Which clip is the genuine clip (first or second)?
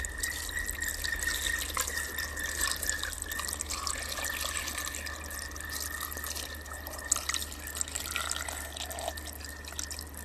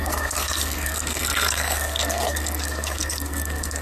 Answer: first